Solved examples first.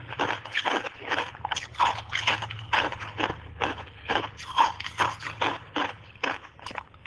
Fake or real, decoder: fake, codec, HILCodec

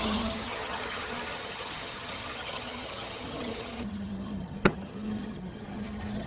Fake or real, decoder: fake, vocoder, HiFi-GAN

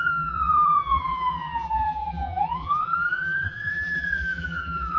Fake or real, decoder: fake, vocoder, BigVGAN v2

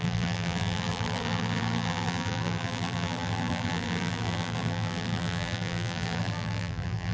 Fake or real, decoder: fake, vocoder, BigVGAN v2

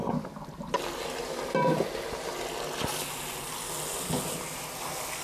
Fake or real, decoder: real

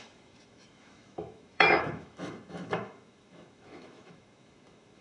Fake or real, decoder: fake, autoencoder, DAC-VAE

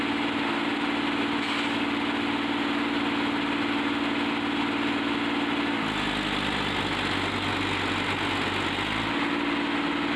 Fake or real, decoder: real